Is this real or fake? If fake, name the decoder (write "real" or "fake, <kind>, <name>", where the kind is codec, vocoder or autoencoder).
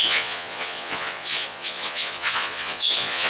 fake, vocoder, Vocos